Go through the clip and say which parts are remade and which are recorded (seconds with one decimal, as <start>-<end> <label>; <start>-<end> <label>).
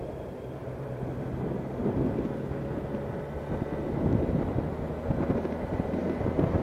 0.0-0.6 recorded; 0.6-1.2 remade; 1.2-6.6 recorded